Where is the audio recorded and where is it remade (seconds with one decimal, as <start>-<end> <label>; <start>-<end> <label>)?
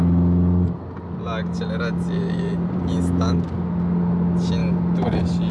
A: 0.0-5.5 recorded